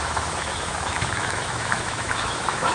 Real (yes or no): no